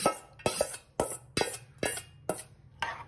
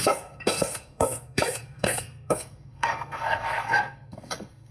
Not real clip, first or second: second